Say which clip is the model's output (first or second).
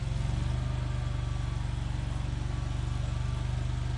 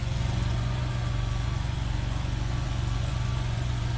second